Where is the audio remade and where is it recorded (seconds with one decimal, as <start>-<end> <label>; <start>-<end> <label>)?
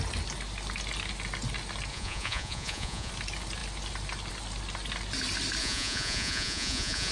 0.0-1.9 recorded; 1.9-3.1 remade; 3.1-5.6 recorded; 5.6-7.1 remade